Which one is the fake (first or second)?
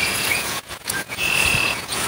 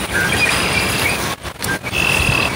first